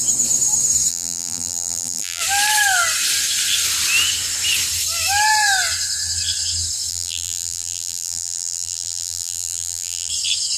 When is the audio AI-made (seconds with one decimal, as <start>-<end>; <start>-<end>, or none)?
0.9-2.2; 6.9-10.1